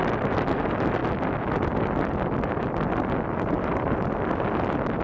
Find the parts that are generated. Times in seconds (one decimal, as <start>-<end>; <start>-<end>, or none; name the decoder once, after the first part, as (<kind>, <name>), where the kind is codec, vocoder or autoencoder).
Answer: none